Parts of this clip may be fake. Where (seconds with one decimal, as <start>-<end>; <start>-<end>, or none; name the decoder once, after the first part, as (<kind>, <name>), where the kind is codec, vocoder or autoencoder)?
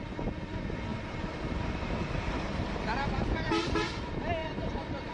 0.9-4.0 (vocoder, BigVGAN v2); 4.4-5.1